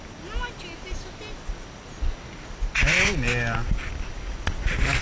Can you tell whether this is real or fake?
real